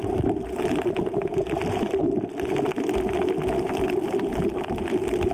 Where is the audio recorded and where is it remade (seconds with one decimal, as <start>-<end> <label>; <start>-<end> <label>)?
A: 0.0-2.0 remade; 2.0-4.4 recorded; 4.4-5.3 remade